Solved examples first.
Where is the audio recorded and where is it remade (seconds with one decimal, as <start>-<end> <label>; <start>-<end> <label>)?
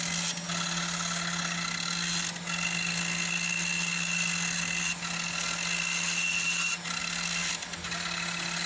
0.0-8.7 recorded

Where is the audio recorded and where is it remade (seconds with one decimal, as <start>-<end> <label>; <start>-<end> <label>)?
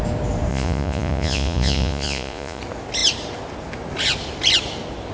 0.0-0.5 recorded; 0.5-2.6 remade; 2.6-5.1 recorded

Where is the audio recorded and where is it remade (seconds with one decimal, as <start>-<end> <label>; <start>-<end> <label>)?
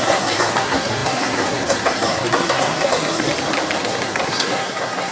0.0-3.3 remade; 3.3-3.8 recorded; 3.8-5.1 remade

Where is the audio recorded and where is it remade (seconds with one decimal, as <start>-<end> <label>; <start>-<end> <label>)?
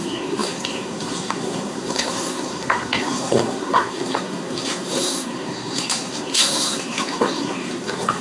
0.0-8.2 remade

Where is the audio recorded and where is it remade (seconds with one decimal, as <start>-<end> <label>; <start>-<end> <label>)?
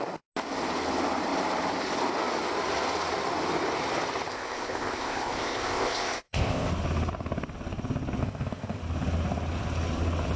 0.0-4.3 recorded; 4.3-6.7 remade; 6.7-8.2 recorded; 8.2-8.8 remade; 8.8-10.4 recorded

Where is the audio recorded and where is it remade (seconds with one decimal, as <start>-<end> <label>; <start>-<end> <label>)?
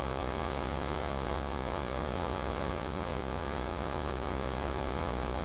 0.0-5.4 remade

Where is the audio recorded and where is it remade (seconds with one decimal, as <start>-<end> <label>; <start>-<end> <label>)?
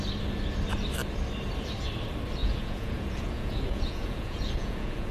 0.0-2.4 recorded; 2.4-5.1 remade